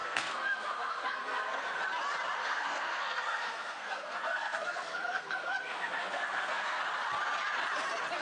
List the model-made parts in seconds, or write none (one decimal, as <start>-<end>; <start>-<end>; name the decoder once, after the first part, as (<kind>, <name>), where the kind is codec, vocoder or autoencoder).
0.0-1.8 (codec, SNAC); 2.4-6.8